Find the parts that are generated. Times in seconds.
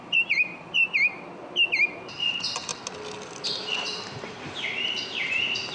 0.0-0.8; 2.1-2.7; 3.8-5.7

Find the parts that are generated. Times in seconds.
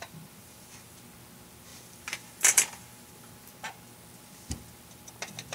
0.4-1.0; 1.7-3.3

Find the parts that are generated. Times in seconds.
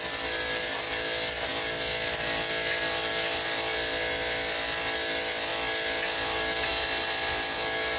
none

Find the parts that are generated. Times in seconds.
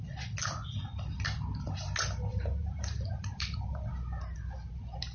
2.3-3.9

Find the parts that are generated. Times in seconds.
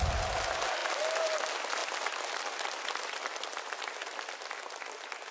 none